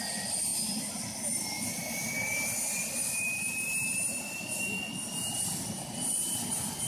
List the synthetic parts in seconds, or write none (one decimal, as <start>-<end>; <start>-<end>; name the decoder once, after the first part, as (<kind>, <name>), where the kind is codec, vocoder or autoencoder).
0.0-6.9 (vocoder, BigVGAN v2)